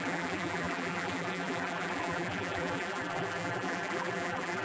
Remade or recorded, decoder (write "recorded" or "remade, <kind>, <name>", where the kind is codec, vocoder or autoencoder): remade, vocoder, BigVGAN v2